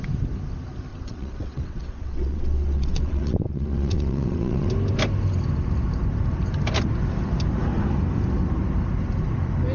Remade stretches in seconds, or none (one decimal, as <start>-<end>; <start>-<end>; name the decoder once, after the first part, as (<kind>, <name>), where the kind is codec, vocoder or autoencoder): 0.9-4.7 (vocoder, WaveNeXt)